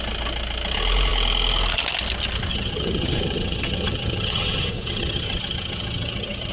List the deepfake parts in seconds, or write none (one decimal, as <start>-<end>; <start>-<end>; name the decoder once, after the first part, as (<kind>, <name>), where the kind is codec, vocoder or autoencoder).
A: 2.5-6.5 (vocoder, HiFi-GAN)